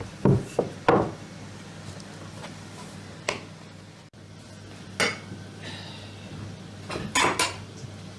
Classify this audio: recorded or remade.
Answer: recorded